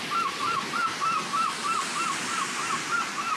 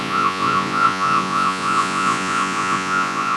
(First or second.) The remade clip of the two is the second